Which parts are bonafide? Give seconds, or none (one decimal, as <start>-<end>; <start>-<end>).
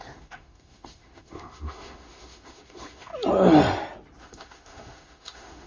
3.1-4.2